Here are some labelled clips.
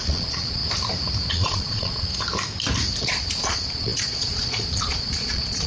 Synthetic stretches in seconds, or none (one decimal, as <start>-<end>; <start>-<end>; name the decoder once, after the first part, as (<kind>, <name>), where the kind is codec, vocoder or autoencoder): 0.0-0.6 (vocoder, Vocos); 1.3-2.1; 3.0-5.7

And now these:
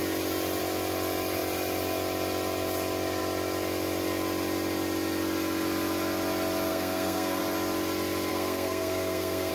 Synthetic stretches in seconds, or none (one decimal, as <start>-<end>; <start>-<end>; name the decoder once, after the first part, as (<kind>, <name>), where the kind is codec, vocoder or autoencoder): 6.7-7.4 (codec, SNAC); 8.3-9.5

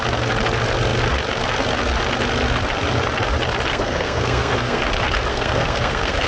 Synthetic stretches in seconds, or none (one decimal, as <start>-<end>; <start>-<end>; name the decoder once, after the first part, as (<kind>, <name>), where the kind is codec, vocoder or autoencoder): 3.7-4.8 (codec, SNAC); 5.3-6.3

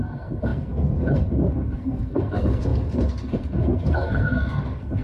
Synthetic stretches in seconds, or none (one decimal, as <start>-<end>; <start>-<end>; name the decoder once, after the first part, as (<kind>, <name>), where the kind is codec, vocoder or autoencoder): 0.0-5.0 (codec, SNAC)

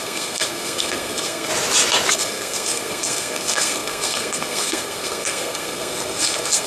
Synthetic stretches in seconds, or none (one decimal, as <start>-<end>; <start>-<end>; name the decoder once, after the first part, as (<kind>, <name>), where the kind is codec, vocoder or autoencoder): 0.0-1.5 (codec, SNAC); 2.1-6.7

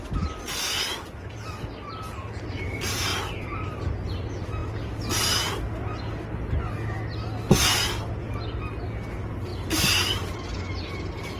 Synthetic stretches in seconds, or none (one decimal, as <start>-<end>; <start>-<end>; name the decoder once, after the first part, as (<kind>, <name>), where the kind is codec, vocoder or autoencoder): 3.1-3.8 (vocoder, BigVGAN v2)

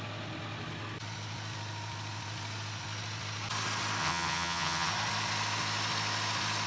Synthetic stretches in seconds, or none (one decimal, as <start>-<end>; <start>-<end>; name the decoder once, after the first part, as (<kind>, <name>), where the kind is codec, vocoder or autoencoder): 4.0-4.9 (vocoder, HiFi-GAN)

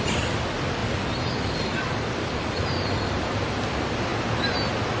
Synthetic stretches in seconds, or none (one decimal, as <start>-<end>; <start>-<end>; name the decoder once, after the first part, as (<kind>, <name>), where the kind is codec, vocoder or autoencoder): 0.0-4.1 (vocoder, BigVGAN v2)